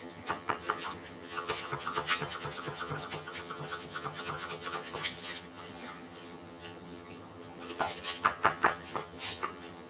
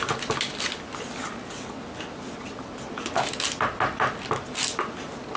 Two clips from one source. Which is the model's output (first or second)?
first